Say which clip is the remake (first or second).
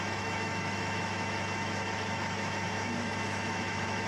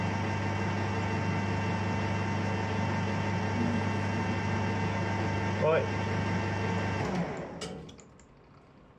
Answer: first